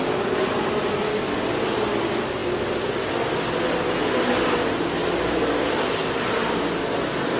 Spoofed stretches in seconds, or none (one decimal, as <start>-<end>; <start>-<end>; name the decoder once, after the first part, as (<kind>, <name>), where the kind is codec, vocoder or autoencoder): none